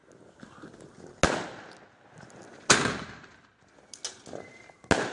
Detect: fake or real real